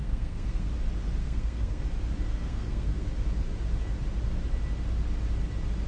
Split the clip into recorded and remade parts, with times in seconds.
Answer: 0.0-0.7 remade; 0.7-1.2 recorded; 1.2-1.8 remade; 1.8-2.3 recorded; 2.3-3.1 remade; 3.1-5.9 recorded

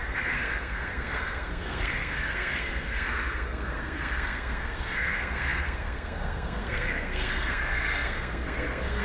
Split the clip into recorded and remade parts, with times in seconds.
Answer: 0.0-9.0 remade